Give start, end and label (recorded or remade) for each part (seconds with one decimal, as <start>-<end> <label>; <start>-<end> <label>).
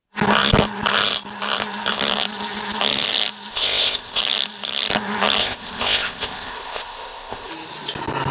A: 0.0-3.5 recorded; 3.5-4.2 remade; 4.2-5.4 recorded; 5.4-7.5 remade; 7.5-8.3 recorded